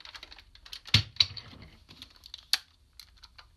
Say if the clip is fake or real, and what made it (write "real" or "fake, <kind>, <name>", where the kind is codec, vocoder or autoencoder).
real